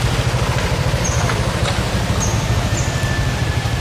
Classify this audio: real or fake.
real